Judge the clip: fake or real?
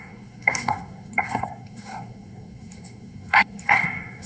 fake